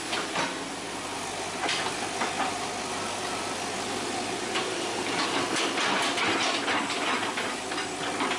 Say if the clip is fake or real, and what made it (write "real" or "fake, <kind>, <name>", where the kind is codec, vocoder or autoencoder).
real